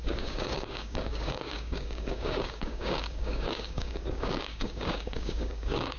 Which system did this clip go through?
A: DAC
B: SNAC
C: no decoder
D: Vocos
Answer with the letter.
A